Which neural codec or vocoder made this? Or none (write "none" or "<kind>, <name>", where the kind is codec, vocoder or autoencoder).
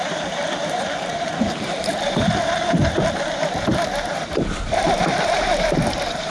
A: vocoder, BigVGAN v2